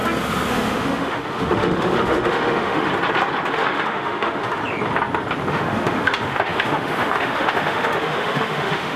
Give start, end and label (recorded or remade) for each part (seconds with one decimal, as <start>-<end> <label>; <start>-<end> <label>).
0.0-0.5 recorded; 0.5-2.9 remade; 2.9-3.5 recorded; 3.5-4.6 remade; 4.6-5.5 recorded; 5.5-9.0 remade